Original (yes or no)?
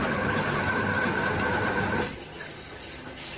yes